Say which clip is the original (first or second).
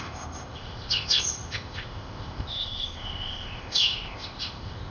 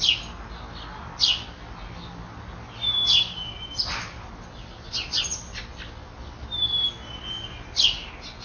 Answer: second